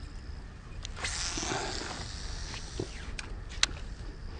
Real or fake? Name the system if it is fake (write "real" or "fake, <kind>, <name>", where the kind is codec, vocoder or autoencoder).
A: real